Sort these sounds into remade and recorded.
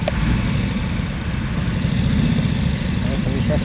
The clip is recorded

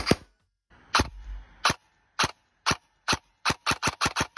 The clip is recorded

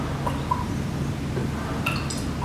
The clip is recorded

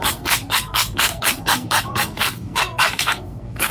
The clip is remade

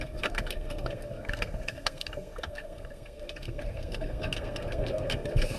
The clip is remade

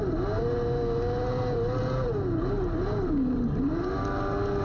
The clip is recorded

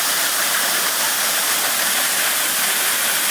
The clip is recorded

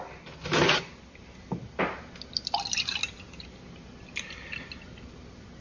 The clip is recorded